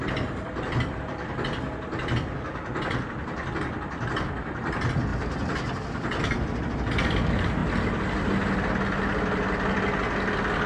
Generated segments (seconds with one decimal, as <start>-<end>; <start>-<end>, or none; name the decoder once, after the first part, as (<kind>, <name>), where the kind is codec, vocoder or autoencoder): none